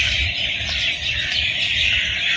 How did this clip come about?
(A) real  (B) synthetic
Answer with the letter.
A